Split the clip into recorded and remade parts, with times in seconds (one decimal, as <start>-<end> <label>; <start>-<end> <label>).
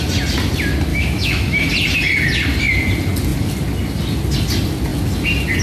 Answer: 0.0-0.9 recorded; 0.9-1.7 remade; 1.7-5.6 recorded